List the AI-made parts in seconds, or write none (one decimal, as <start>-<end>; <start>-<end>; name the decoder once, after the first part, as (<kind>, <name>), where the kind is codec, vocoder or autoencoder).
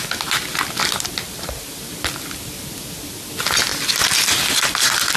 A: none